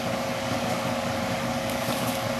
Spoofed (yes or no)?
yes